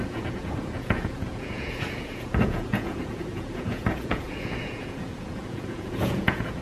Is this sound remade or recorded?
remade